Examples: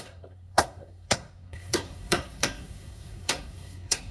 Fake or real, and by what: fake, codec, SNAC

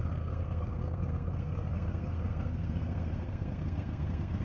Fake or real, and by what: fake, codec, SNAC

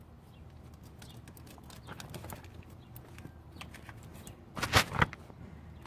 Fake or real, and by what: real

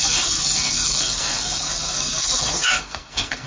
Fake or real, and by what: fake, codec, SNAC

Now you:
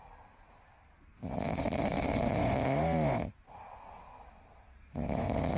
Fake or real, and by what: real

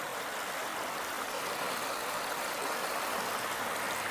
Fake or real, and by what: real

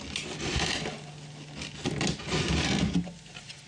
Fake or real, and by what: real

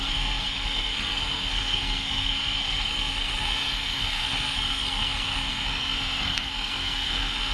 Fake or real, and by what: fake, codec, SNAC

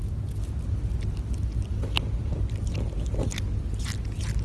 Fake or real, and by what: real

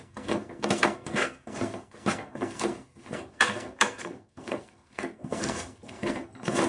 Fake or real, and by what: fake, codec, SNAC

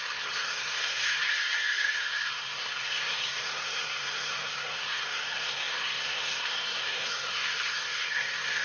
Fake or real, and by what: fake, codec, SNAC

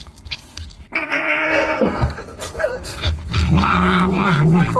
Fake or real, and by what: fake, codec, SNAC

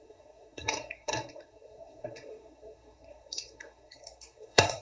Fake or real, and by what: fake, codec, SNAC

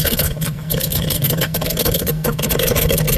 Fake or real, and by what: fake, codec, SNAC